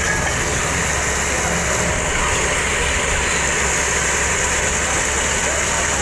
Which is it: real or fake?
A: real